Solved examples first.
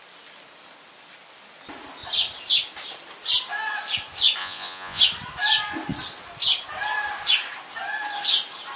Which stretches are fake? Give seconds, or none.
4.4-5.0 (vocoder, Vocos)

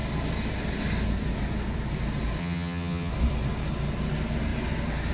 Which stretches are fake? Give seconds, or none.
2.4-3.1 (vocoder, HiFi-GAN)